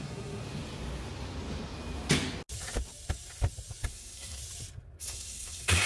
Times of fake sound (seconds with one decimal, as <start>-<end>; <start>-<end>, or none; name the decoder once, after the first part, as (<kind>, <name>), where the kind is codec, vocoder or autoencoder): 0.0-0.4 (codec, SNAC); 3.9-4.4; 5.0-5.9